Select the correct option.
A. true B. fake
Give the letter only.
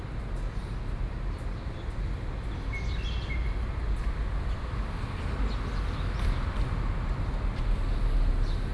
A